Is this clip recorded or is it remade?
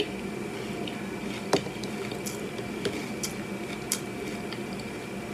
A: recorded